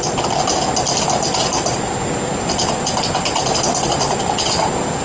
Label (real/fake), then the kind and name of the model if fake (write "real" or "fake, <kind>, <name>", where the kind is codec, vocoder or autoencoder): real